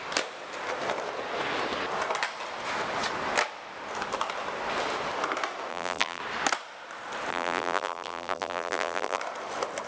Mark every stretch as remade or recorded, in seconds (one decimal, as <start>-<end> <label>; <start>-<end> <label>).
0.0-5.7 recorded; 5.7-6.2 remade; 6.2-7.3 recorded; 7.3-9.2 remade; 9.2-9.9 recorded